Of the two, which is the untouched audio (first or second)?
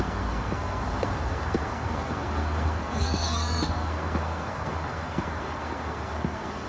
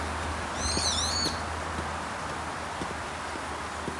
second